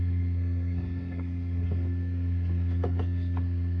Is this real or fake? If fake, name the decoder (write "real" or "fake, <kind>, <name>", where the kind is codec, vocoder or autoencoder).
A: fake, codec, SNAC